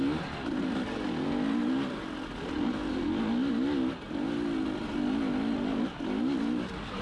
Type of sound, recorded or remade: recorded